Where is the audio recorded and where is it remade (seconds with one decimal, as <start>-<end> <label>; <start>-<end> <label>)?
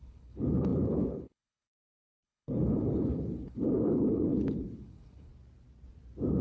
0.0-5.3 remade; 5.3-6.4 recorded